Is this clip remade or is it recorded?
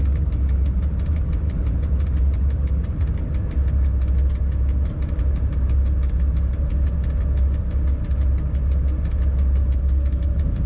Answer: recorded